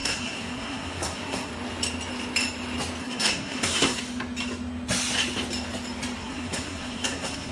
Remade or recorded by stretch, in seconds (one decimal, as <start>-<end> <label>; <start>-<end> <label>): 0.0-1.5 remade; 1.5-3.0 recorded; 3.0-4.0 remade; 4.0-6.2 recorded; 6.2-7.5 remade